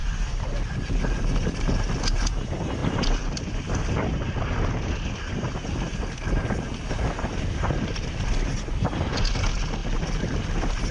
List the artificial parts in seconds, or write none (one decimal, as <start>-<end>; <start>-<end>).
none